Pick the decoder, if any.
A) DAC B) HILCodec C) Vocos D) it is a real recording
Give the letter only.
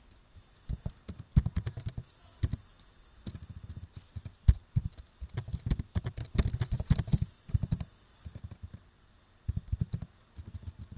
D